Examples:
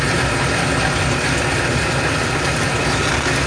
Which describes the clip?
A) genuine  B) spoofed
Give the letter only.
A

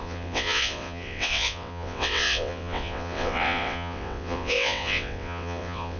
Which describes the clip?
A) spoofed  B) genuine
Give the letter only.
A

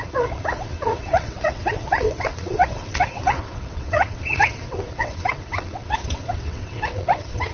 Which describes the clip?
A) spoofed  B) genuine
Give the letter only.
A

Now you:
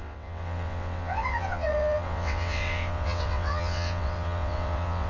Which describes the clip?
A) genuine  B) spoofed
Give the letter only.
B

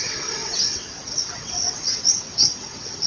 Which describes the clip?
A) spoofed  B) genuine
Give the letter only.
A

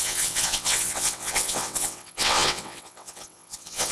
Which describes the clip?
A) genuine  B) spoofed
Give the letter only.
B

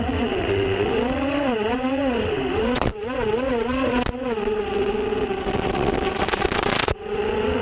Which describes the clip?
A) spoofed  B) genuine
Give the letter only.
A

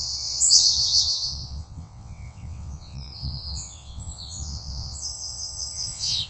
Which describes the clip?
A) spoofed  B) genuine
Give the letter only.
A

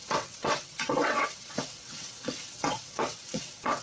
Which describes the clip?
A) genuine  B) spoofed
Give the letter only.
B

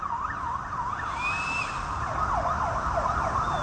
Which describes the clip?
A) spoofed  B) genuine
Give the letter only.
B